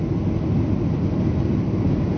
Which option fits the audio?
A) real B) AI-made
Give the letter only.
A